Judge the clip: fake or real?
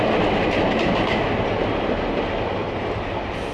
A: real